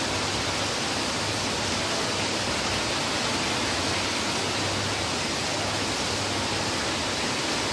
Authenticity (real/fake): real